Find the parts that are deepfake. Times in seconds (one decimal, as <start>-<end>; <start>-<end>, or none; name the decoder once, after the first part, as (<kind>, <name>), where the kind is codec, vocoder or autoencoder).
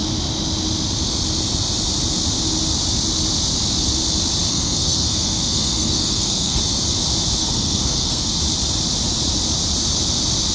4.5-6.6 (codec, SNAC); 7.4-8.4